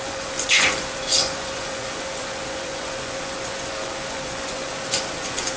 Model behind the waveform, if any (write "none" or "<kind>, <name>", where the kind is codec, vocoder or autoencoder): vocoder, Vocos